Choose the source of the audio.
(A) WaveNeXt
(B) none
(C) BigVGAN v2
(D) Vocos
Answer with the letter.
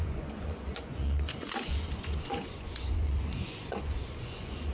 D